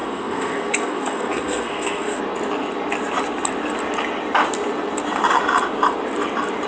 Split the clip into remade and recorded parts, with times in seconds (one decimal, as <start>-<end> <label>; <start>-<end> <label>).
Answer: 0.0-2.2 remade; 2.2-6.7 recorded